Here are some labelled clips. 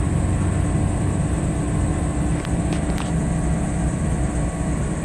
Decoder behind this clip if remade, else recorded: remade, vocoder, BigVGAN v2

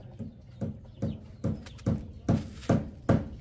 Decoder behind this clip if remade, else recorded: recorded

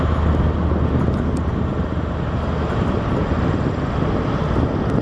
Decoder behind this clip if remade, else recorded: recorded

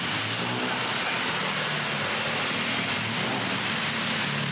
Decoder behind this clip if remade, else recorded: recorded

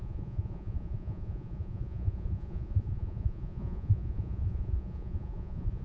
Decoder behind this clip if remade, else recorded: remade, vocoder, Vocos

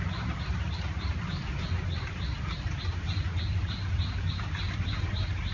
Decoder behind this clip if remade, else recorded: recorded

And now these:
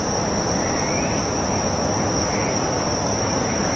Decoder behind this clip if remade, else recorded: recorded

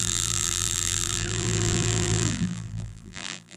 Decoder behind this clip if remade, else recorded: remade, vocoder, BigVGAN v2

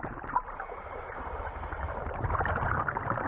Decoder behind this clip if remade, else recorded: remade, vocoder, BigVGAN v2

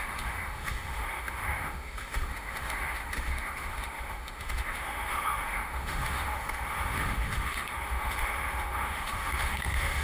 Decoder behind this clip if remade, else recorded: remade, autoencoder, DAC-VAE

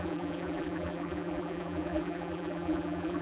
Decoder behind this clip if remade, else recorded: remade, vocoder, BigVGAN v2